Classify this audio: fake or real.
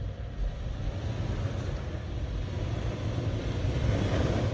real